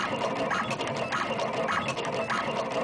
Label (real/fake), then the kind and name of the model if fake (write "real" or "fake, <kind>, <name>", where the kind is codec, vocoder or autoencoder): real